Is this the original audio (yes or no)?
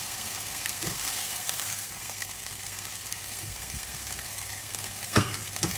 no